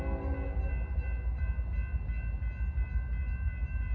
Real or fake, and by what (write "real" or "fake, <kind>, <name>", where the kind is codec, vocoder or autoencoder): real